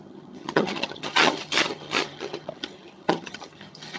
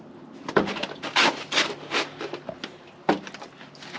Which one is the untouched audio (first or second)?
second